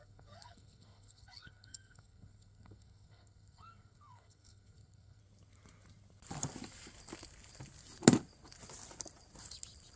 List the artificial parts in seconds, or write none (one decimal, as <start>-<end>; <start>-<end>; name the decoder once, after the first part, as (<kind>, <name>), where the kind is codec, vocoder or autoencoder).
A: 0.0-5.2 (codec, SNAC)